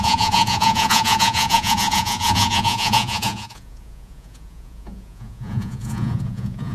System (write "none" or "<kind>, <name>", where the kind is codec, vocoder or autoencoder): vocoder, Vocos